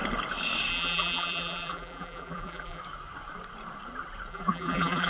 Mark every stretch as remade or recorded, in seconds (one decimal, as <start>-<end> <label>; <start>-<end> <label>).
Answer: 0.0-0.7 recorded; 0.7-2.8 remade; 2.8-4.3 recorded; 4.3-5.1 remade